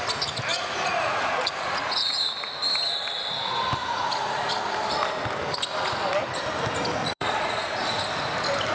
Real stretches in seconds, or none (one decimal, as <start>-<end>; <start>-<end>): 0.0-0.5; 2.2-3.8; 4.5-7.0; 8.0-8.7